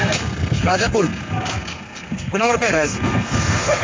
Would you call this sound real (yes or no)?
no